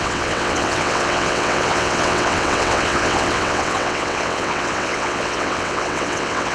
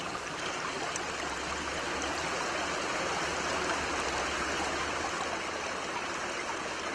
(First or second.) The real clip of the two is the second